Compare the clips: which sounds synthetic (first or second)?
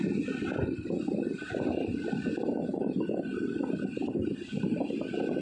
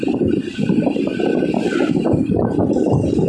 second